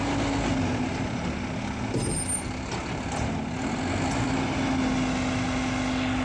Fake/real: real